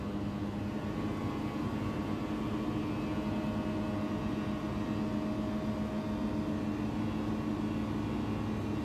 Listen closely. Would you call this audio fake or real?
real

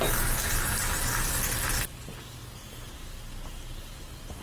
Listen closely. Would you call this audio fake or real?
real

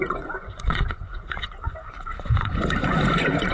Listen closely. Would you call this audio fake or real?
fake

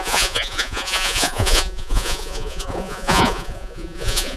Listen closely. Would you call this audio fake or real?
fake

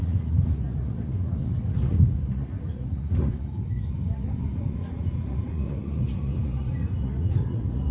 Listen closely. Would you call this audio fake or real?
fake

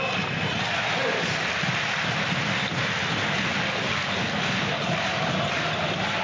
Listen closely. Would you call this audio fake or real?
real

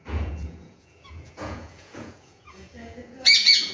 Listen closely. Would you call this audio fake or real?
fake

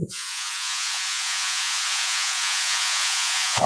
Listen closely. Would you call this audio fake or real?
fake